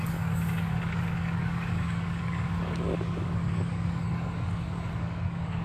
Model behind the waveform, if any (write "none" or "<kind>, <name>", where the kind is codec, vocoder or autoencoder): codec, DAC